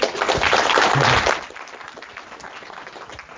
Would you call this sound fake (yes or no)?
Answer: no